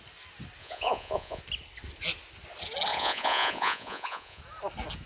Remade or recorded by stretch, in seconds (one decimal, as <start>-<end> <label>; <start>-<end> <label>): 0.0-0.6 recorded; 0.6-1.4 remade; 1.4-2.9 recorded; 2.9-4.4 remade; 4.4-5.1 recorded